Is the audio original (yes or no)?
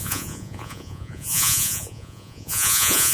no